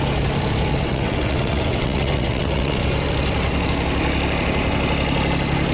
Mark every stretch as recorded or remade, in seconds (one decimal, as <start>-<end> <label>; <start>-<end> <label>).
0.0-0.7 recorded; 0.7-2.8 remade; 2.8-5.7 recorded